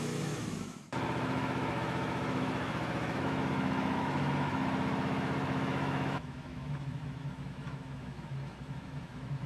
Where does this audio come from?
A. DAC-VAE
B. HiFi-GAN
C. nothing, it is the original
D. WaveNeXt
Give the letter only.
A